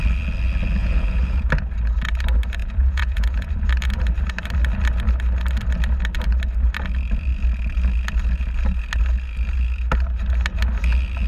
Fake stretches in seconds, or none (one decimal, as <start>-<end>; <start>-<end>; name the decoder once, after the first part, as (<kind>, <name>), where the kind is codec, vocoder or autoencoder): 0.8-1.5 (vocoder, Vocos); 2.6-3.5